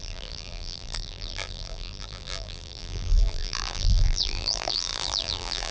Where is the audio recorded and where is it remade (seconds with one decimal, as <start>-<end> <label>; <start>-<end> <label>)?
0.0-5.7 remade